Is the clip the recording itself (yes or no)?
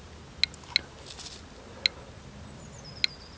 yes